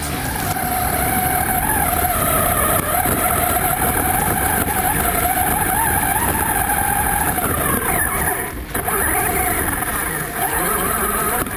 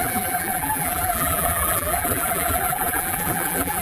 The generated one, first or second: second